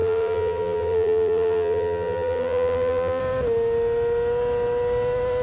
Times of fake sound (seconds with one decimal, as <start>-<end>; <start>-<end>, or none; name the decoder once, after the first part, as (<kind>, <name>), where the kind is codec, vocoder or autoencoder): 0.0-3.2 (vocoder, BigVGAN v2)